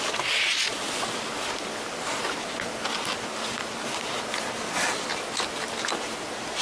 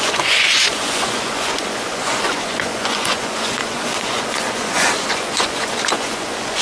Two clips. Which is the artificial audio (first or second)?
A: second